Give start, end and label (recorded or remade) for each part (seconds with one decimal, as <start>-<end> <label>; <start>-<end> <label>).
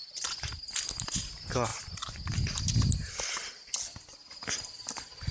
0.0-5.3 recorded